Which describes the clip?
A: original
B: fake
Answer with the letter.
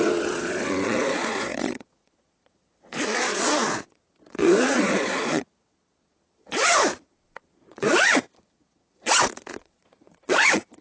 B